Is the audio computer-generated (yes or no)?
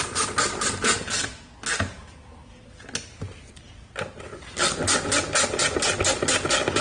no